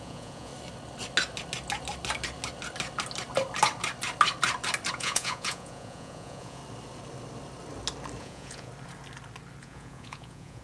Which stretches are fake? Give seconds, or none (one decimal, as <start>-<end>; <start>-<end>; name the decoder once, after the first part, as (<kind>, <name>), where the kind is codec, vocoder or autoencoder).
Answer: 0.0-0.5 (vocoder, Vocos); 4.9-6.6; 8.2-8.7; 9.6-10.6